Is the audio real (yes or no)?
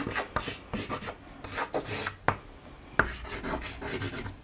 yes